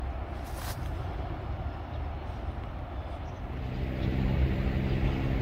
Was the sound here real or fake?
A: real